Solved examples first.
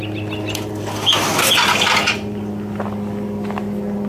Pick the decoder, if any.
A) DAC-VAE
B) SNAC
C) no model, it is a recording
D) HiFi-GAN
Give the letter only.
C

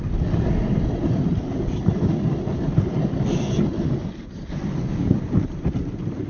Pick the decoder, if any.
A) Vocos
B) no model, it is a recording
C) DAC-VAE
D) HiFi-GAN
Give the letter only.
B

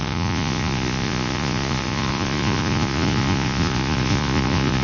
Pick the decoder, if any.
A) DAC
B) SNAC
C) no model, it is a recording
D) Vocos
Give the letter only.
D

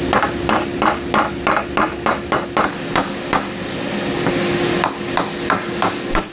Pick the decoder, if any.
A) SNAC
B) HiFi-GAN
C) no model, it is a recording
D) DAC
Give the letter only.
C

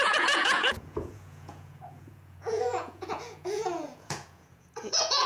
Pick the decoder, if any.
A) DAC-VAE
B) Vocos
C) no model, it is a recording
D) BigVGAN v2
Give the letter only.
B